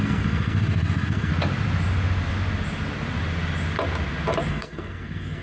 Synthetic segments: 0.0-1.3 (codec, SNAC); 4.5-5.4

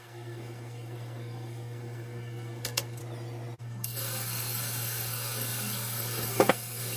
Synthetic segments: 0.0-3.0 (codec, SNAC); 3.6-7.0